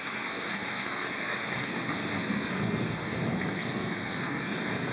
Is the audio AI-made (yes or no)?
yes